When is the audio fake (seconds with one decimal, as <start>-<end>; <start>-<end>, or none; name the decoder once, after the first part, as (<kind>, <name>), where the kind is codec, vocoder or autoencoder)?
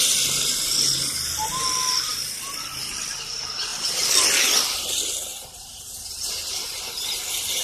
5.3-7.6 (vocoder, BigVGAN v2)